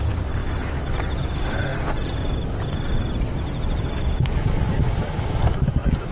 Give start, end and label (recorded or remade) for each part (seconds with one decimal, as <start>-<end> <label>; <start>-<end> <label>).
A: 0.0-6.1 remade